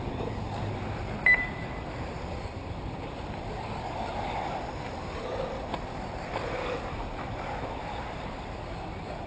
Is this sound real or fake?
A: fake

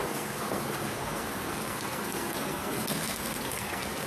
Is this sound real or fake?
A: fake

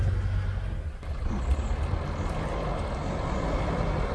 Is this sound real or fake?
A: real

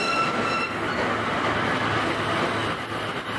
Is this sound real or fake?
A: real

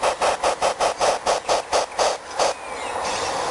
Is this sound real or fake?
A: real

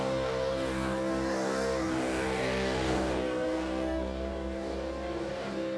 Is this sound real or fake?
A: fake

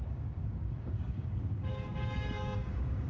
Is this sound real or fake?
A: fake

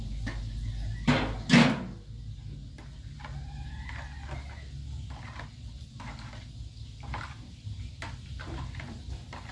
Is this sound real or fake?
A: real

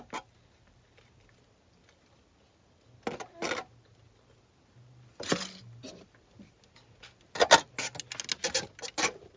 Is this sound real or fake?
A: real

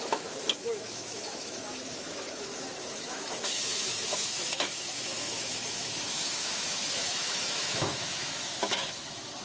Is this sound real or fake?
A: fake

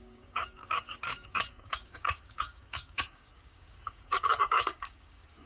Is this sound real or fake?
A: fake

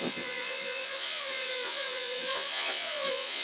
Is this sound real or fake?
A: fake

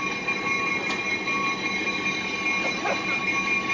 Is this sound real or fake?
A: real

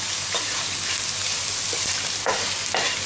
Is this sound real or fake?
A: real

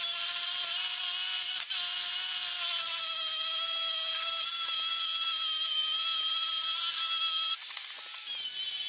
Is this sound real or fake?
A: real